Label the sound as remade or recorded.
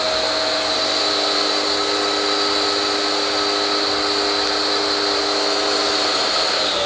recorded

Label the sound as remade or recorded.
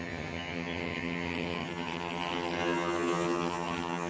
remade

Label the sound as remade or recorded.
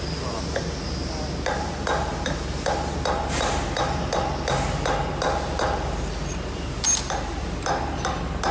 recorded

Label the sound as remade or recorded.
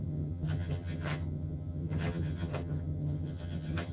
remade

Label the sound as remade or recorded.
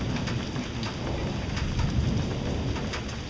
recorded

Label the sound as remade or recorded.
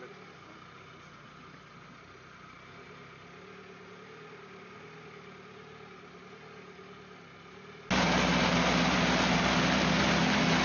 recorded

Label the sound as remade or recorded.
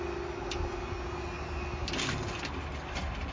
recorded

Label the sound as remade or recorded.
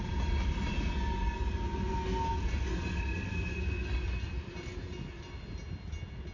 recorded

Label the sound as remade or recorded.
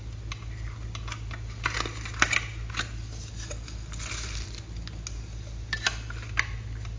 recorded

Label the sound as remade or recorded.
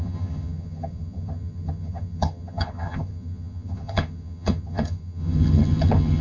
remade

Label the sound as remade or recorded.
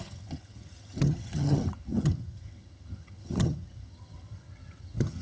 remade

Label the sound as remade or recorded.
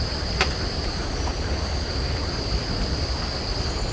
recorded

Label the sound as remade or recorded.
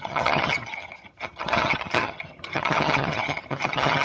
remade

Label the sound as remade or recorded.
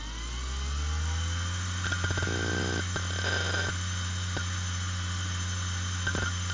recorded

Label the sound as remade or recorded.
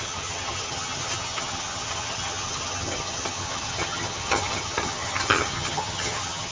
remade